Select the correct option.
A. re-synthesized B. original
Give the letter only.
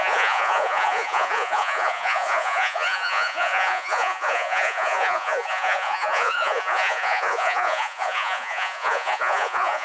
A